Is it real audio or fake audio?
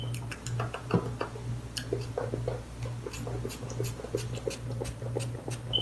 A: real